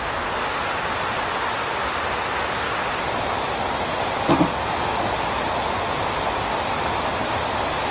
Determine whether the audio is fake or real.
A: real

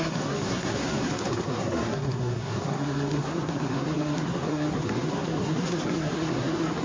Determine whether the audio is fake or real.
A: fake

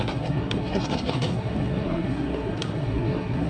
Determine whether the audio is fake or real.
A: fake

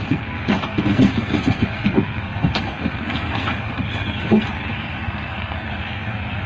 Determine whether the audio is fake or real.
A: fake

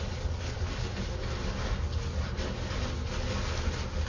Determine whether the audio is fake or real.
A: real